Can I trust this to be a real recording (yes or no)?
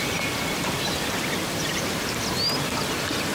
yes